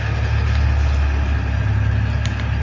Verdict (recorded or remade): recorded